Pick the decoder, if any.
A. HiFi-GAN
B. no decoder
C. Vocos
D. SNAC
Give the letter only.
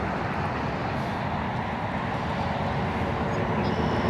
B